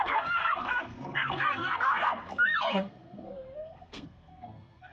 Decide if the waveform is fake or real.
fake